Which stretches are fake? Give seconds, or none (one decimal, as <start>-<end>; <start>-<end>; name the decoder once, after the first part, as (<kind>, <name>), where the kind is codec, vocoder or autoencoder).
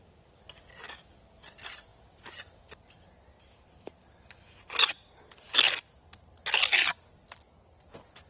none